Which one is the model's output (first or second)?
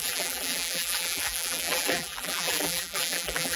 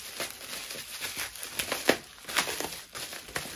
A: first